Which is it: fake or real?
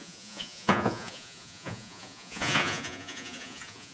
fake